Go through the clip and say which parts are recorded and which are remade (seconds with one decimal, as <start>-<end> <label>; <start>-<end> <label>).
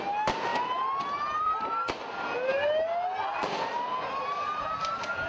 0.0-5.3 recorded